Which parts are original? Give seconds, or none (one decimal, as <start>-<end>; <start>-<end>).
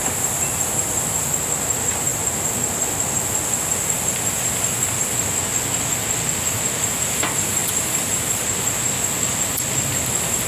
0.0-10.5